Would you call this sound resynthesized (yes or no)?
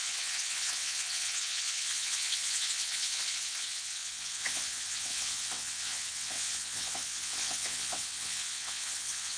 yes